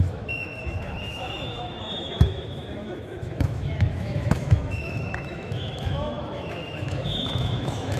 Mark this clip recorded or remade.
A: remade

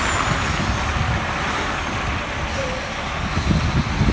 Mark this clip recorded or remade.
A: recorded